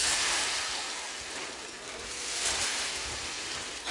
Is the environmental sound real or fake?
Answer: real